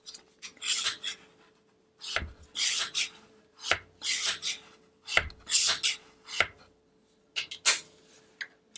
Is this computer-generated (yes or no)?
no